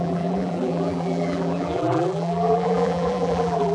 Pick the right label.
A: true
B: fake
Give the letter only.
B